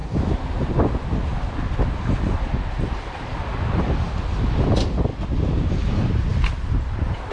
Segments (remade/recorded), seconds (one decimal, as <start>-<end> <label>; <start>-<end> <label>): 0.0-5.1 recorded; 5.1-5.7 remade; 5.7-6.3 recorded; 6.3-7.3 remade